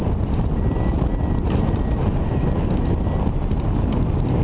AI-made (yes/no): no